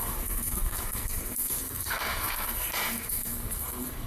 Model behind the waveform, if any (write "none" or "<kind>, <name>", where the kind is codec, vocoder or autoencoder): codec, SNAC